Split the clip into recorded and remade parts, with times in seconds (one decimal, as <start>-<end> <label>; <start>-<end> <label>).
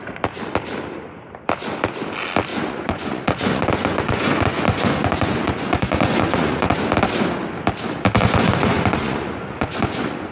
0.0-2.5 recorded; 2.5-6.8 remade; 6.8-8.2 recorded; 8.2-10.3 remade